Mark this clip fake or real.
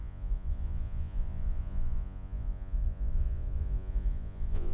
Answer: fake